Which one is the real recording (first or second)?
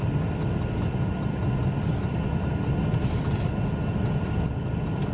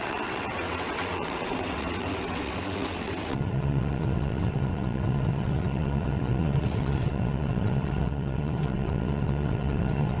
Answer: first